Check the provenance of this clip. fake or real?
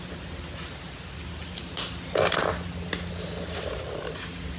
real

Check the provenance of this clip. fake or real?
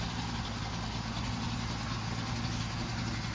real